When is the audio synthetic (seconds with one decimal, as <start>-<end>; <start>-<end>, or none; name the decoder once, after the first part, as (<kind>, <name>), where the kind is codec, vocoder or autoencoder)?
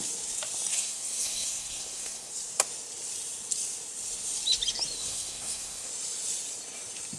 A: 0.7-2.3 (codec, SNAC); 5.0-5.9